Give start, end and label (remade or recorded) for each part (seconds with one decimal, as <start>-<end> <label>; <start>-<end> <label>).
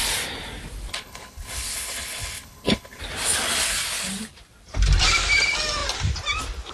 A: 0.0-0.9 recorded; 0.9-3.0 remade; 3.0-6.7 recorded